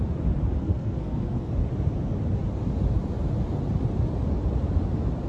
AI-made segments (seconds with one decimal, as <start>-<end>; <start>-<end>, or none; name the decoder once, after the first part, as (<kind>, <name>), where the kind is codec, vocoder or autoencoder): 0.6-1.5 (codec, SNAC)